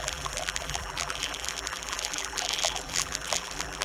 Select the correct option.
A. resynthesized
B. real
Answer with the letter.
A